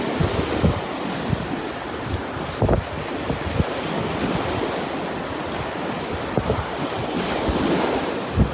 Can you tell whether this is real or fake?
real